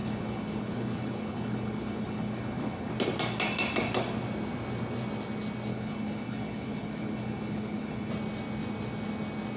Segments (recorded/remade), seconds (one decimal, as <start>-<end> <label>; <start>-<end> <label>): 0.0-2.9 remade; 2.9-5.7 recorded; 5.7-8.1 remade; 8.1-9.6 recorded